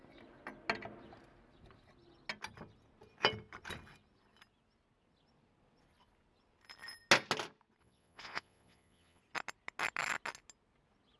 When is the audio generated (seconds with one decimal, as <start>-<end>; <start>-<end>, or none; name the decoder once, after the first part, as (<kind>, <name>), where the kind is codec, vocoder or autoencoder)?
7.8-9.2 (vocoder, Vocos)